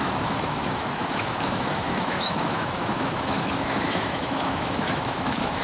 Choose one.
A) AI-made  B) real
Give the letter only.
A